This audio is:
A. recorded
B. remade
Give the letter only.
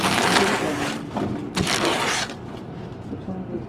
A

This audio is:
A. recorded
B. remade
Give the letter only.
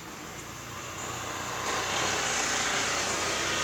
A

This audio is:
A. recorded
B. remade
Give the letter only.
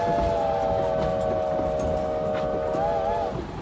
A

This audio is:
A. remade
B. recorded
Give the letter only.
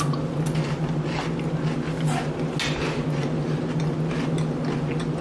B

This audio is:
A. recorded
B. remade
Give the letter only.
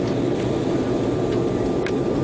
A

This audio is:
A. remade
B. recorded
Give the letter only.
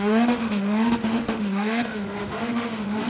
A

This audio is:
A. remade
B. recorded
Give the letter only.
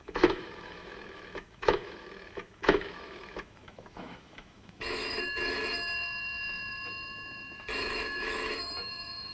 A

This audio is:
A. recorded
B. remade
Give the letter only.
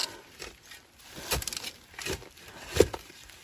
A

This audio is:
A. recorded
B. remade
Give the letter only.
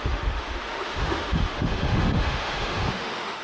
B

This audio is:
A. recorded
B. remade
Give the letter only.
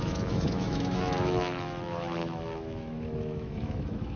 B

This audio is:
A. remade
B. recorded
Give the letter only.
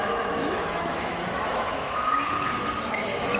A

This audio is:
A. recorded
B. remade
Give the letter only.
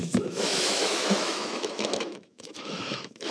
B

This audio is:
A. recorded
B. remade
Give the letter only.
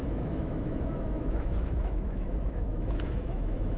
B